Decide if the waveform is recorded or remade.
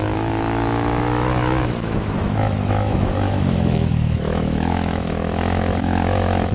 remade